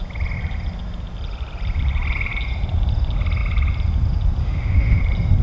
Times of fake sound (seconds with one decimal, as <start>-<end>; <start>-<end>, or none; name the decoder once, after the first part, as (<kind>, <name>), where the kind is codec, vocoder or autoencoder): 4.4-5.0 (autoencoder, DAC-VAE)